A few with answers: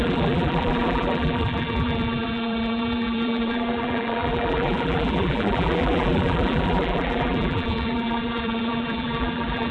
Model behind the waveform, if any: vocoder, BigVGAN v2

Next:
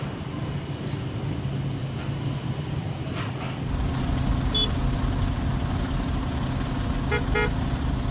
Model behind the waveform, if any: none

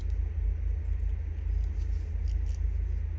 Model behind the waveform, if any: none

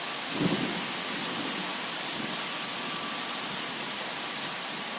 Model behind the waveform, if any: none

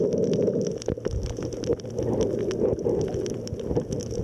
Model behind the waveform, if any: vocoder, BigVGAN v2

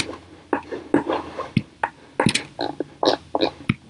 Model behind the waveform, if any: none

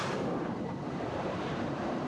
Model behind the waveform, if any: vocoder, BigVGAN v2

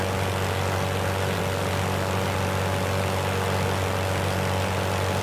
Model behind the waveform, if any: none